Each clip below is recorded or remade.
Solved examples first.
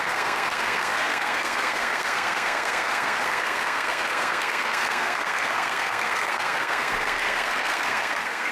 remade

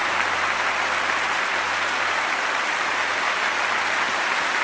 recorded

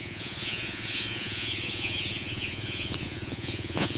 remade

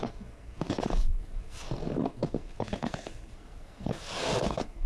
remade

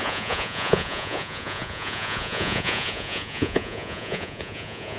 remade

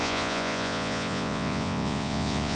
remade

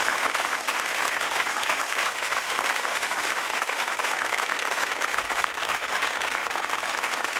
remade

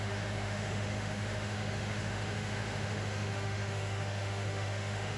remade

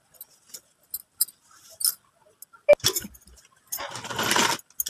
recorded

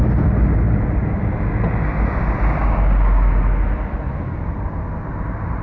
recorded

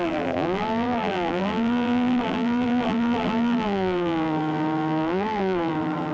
remade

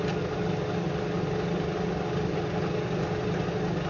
recorded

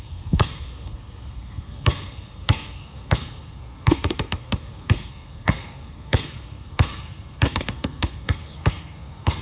remade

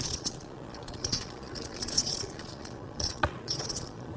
remade